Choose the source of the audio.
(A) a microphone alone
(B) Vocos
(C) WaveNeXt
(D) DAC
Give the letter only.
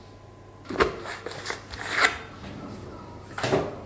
A